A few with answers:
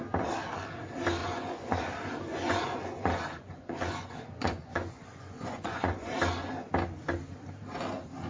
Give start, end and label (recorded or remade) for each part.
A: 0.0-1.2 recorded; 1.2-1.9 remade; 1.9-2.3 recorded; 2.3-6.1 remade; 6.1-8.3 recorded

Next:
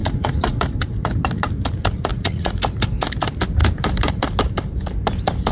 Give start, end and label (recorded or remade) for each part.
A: 0.0-0.6 remade; 0.6-2.1 recorded; 2.1-2.6 remade; 2.6-5.5 recorded

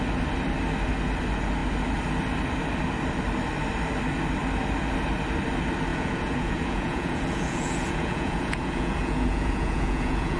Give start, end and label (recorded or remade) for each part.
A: 0.0-5.9 recorded; 5.9-10.4 remade

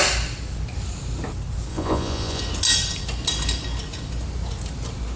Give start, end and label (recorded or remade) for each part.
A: 0.0-1.7 recorded; 1.7-2.4 remade; 2.4-5.2 recorded

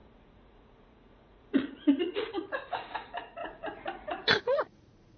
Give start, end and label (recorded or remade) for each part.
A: 0.0-5.2 remade